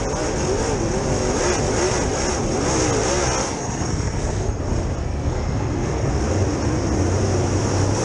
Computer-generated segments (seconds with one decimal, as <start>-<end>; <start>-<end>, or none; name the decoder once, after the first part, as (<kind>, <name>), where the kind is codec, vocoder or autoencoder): 3.4-4.6 (codec, SNAC); 5.0-6.1